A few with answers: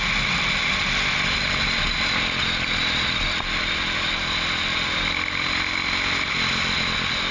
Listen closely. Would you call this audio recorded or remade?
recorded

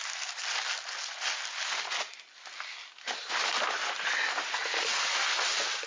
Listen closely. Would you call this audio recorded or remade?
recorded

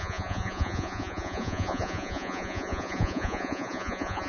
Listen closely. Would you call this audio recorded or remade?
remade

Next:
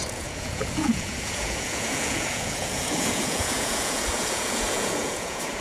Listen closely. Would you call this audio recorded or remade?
remade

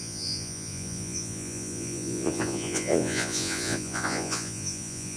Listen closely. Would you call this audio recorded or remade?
remade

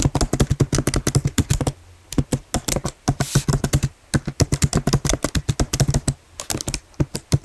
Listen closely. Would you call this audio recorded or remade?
recorded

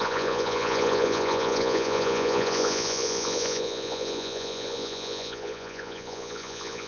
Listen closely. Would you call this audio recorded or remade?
remade